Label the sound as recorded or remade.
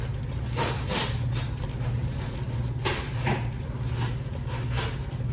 recorded